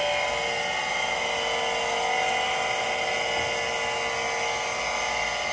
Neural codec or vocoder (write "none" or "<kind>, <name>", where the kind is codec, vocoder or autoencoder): none